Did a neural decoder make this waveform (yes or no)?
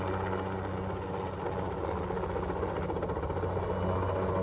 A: no